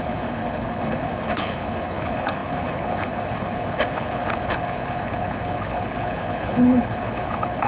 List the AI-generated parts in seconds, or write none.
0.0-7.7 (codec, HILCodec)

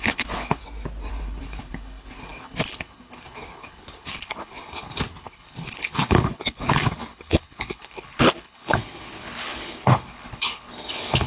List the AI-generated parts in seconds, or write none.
0.0-0.6 (codec, HILCodec); 1.1-11.3

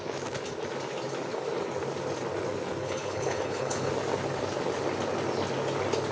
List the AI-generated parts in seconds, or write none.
2.8-3.9 (codec, HILCodec)

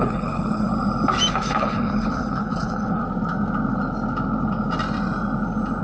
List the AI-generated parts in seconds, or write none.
0.0-0.7 (codec, HILCodec); 1.3-3.0

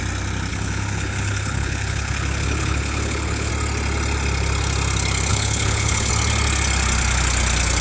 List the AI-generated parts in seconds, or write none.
0.5-3.5 (codec, HILCodec); 5.3-6.1

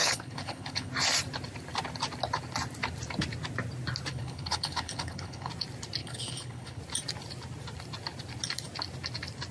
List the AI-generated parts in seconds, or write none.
0.0-0.9 (codec, HILCodec); 4.1-5.5; 6.0-6.8

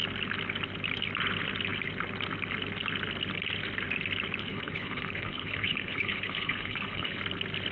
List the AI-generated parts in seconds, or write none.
4.4-7.2 (codec, HILCodec)